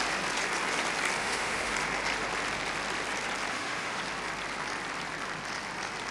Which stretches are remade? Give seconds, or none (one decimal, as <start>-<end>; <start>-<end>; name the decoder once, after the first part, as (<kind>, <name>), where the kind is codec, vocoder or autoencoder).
1.2-1.7 (autoencoder, DAC-VAE); 3.5-4.0